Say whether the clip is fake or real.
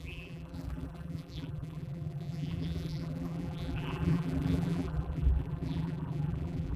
fake